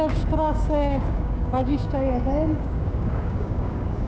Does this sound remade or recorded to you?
remade